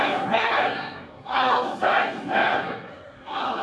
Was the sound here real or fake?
fake